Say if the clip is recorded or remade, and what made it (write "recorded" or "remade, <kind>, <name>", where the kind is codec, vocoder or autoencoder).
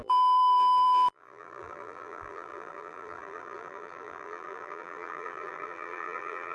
remade, vocoder, BigVGAN v2